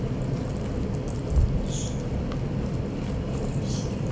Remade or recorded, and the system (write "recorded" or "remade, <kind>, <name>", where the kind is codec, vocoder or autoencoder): recorded